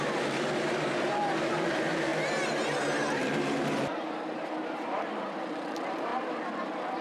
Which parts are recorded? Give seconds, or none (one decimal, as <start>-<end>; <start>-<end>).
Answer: 6.1-7.0